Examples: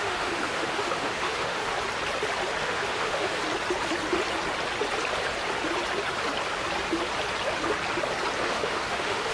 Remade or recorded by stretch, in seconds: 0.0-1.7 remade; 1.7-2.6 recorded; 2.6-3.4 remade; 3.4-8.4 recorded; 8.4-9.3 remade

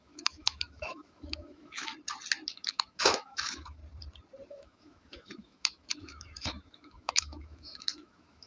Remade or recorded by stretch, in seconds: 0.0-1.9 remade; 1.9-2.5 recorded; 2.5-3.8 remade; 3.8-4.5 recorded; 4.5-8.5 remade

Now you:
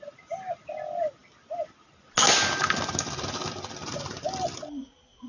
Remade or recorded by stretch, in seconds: 0.0-5.3 recorded

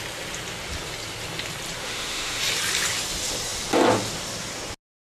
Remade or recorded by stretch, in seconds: 0.0-1.8 recorded; 1.8-2.4 remade; 2.4-5.0 recorded

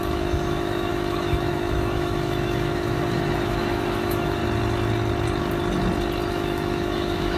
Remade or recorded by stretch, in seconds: 0.0-4.4 remade; 4.4-6.3 recorded; 6.3-7.4 remade

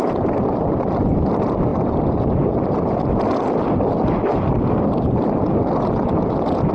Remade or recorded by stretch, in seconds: 0.0-6.7 recorded

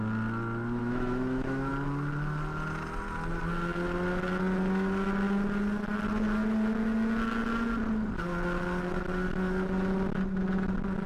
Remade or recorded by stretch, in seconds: 0.0-0.8 recorded; 0.8-1.7 remade; 1.7-11.1 recorded